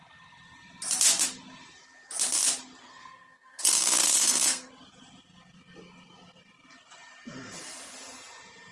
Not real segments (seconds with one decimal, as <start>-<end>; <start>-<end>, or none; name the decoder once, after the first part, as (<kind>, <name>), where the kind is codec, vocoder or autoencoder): 2.8-4.7 (codec, SNAC)